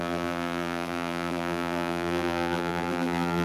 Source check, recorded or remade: remade